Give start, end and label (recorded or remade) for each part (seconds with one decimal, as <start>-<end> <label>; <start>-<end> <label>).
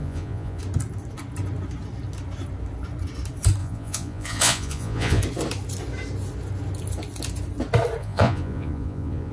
0.0-0.6 remade; 0.6-3.6 recorded; 3.6-5.2 remade; 5.2-8.0 recorded; 8.0-9.3 remade